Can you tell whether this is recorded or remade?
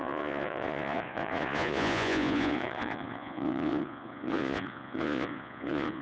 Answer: remade